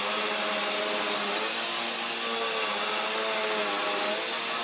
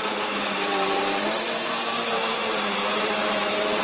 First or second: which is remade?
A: second